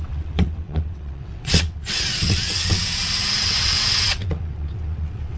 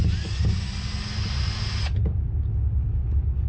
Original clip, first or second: second